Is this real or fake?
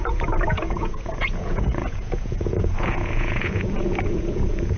fake